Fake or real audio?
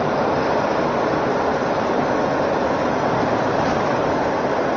real